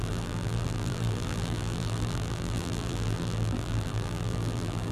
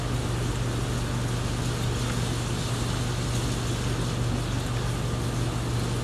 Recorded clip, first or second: second